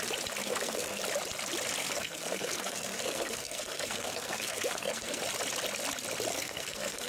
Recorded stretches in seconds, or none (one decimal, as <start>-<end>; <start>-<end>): 0.0-0.4; 1.0-1.8; 5.2-6.3